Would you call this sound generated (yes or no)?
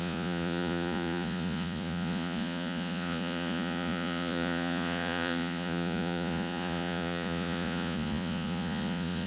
yes